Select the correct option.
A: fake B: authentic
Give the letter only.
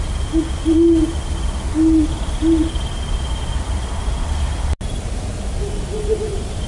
B